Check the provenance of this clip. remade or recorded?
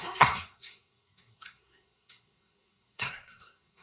remade